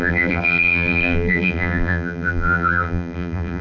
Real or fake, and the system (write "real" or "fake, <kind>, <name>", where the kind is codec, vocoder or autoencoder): fake, vocoder, BigVGAN v2